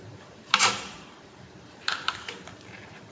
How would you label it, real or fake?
fake